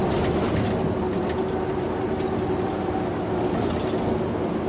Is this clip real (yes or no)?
yes